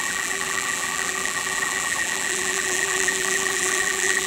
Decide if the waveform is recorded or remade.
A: remade